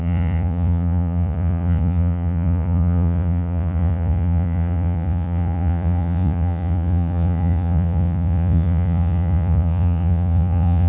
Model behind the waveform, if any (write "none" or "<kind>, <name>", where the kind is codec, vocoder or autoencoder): vocoder, Vocos